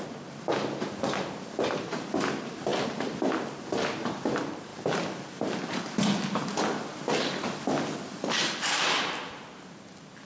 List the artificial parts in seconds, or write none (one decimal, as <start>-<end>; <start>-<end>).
none